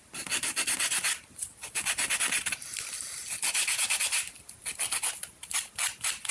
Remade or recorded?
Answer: recorded